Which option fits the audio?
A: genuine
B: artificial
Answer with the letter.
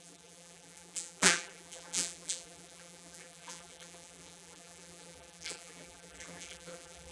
B